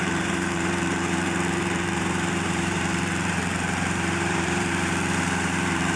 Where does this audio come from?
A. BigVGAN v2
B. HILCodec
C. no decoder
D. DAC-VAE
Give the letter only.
A